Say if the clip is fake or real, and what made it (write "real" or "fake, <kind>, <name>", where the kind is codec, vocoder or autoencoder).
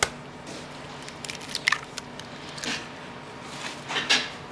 real